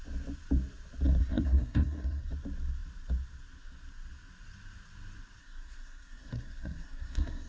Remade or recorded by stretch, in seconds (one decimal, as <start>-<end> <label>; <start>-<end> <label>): 0.0-1.2 recorded; 1.2-2.3 remade; 2.3-5.4 recorded; 5.4-7.5 remade